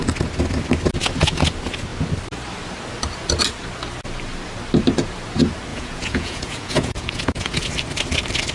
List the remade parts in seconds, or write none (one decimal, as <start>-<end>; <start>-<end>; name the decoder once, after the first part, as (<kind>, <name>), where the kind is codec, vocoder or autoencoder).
5.7-7.7 (vocoder, Vocos)